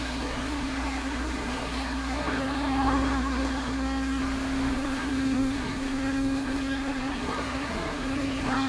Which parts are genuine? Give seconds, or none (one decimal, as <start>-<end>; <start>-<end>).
4.2-4.7